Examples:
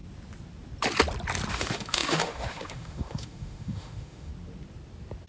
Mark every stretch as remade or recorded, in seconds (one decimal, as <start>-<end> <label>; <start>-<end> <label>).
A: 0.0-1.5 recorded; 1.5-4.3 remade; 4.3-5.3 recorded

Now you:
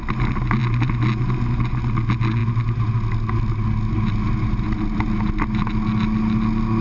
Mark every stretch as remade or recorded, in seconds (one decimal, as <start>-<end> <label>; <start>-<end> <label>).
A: 0.0-6.8 recorded

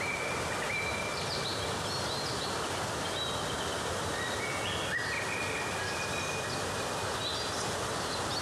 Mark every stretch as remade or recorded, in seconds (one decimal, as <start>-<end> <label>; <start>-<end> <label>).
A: 0.0-8.4 recorded

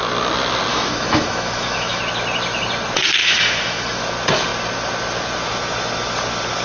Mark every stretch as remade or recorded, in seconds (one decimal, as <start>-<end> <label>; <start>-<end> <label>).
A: 0.0-0.7 recorded; 0.7-2.0 remade; 2.0-3.2 recorded; 3.2-4.0 remade; 4.0-6.6 recorded